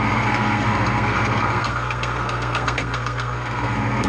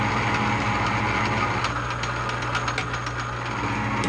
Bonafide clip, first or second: second